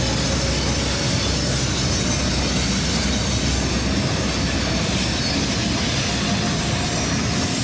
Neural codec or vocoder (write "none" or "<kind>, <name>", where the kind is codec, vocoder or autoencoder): none